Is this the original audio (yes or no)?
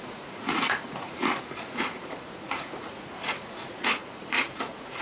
no